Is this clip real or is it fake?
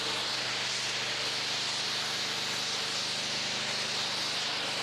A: real